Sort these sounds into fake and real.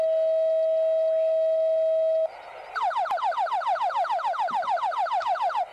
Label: real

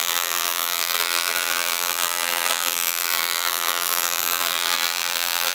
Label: fake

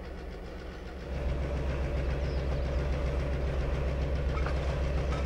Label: real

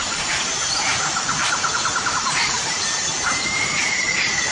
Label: fake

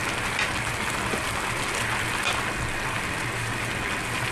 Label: real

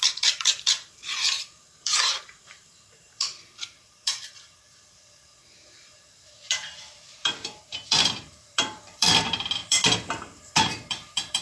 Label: fake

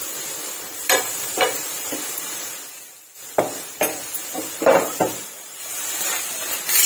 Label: fake